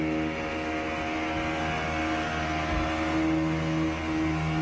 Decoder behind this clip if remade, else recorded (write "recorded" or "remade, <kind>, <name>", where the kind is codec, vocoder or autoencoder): recorded